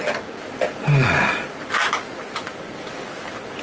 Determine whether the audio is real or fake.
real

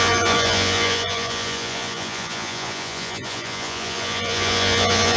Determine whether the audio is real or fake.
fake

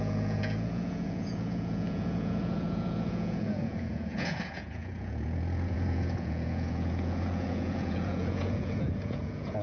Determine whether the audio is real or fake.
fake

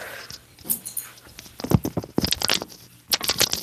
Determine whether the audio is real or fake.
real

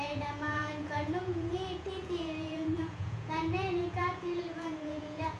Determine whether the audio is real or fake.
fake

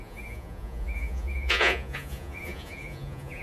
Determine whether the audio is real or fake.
fake